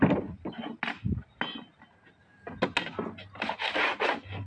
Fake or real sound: real